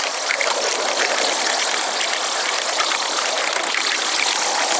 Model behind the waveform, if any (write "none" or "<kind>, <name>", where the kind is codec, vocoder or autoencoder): none